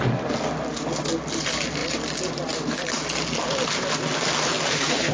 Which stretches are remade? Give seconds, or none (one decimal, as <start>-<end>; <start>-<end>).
none